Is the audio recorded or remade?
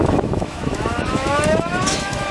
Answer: remade